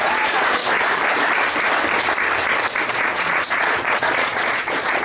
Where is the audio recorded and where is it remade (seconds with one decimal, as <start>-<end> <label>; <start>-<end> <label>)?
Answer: 0.0-0.6 remade; 0.6-2.9 recorded; 2.9-5.0 remade